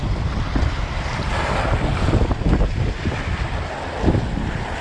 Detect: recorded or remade recorded